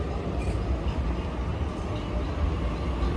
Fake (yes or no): no